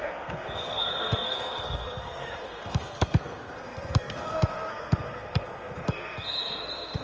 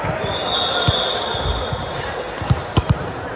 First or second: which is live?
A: second